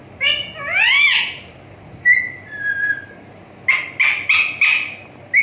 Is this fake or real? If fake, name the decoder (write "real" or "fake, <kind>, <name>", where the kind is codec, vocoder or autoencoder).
real